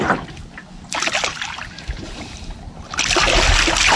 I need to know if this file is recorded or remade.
recorded